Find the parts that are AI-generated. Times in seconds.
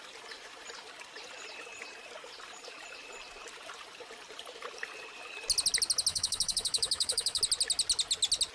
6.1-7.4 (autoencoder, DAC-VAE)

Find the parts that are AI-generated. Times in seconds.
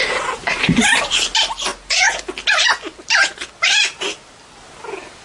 none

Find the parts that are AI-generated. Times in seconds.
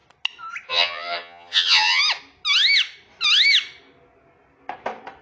0.7-2.0 (vocoder, HiFi-GAN)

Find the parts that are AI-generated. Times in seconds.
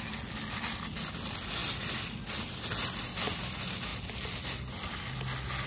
none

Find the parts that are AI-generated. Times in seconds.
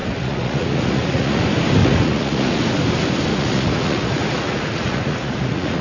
0.0-1.4 (vocoder, Vocos); 1.8-2.6; 3.3-5.8